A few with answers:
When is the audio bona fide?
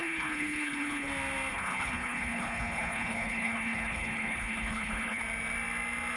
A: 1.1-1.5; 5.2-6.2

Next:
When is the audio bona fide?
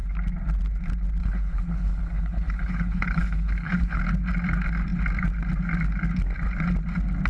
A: 0.0-1.2; 4.0-7.3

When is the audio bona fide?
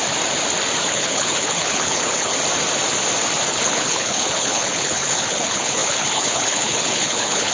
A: 0.0-0.9; 2.3-3.5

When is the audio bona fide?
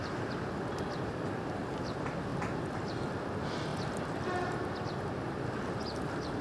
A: 0.0-6.4